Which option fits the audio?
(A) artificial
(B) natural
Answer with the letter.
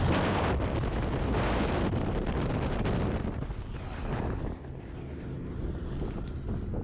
B